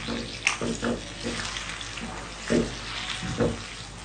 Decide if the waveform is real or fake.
real